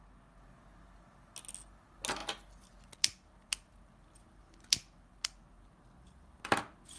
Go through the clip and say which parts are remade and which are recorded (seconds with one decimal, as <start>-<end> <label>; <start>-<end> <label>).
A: 0.0-7.0 recorded